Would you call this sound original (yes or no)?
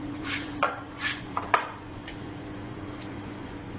no